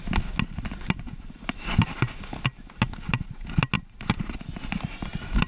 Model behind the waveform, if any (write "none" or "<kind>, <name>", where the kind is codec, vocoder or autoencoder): none